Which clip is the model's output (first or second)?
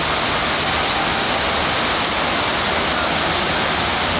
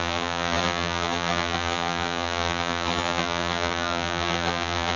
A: second